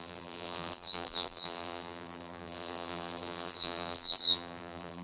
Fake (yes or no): yes